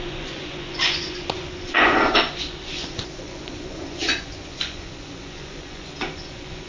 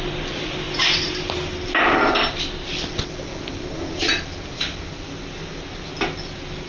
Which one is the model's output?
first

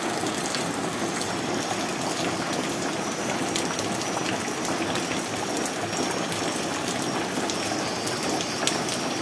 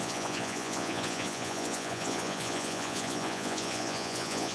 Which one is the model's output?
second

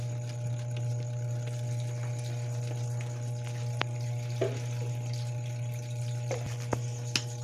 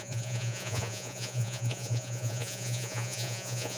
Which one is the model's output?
second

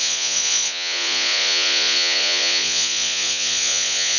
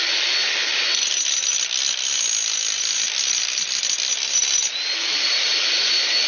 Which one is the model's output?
first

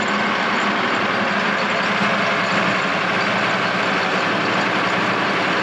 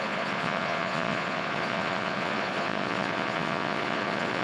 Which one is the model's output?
second